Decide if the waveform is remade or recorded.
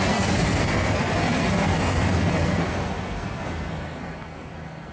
remade